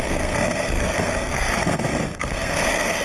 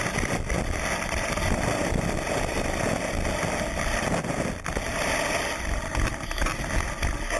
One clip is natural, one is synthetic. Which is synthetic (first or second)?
first